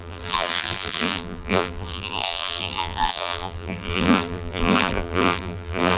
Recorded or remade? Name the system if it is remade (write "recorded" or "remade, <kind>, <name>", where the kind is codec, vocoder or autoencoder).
remade, vocoder, BigVGAN v2